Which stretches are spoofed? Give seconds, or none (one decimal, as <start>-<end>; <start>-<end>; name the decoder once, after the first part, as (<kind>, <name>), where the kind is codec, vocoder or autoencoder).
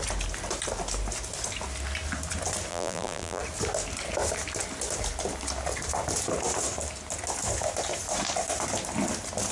2.7-3.4 (vocoder, BigVGAN v2)